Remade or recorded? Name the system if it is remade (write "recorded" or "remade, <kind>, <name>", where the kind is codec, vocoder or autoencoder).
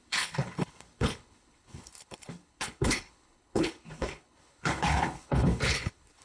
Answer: remade, codec, HILCodec